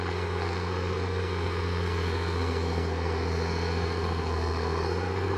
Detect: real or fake fake